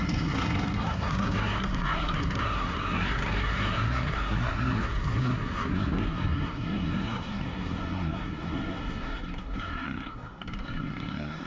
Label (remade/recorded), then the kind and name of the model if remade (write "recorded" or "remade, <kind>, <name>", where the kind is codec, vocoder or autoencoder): remade, codec, SNAC